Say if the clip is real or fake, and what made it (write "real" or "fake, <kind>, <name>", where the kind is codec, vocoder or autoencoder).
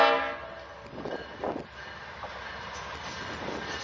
real